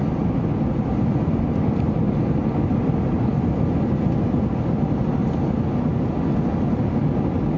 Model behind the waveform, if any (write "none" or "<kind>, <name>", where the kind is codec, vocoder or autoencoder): none